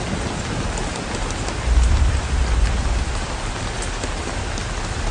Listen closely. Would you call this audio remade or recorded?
recorded